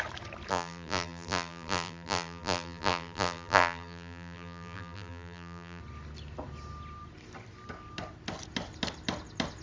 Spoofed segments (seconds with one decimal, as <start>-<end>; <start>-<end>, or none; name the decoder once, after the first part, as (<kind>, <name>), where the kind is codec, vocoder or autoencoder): 0.5-5.8 (vocoder, BigVGAN v2)